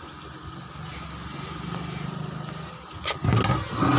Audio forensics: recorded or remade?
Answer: recorded